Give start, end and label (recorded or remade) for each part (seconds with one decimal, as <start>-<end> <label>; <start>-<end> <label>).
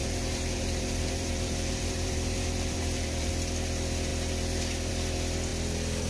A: 0.0-3.3 remade; 3.3-6.1 recorded